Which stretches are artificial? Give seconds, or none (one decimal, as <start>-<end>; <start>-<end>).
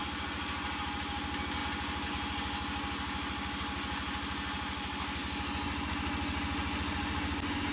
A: 1.6-2.1